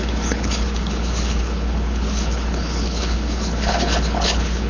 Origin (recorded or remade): remade